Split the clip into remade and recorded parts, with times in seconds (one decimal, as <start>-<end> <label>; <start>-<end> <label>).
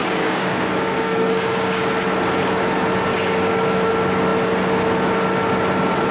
0.0-1.8 remade; 1.8-3.1 recorded; 3.1-3.9 remade; 3.9-6.1 recorded